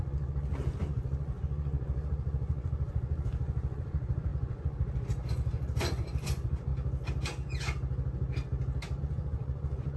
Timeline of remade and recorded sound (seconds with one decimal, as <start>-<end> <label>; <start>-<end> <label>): 0.0-6.7 remade; 6.7-9.0 recorded; 9.0-10.0 remade